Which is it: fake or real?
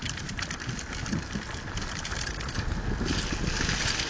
real